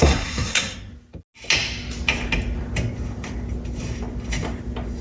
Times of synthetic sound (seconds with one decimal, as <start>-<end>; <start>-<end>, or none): 0.0-0.9